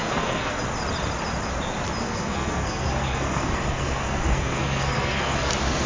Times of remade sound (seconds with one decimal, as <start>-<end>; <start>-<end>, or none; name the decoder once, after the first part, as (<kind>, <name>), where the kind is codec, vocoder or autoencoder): 0.0-0.6 (codec, SNAC); 2.0-5.5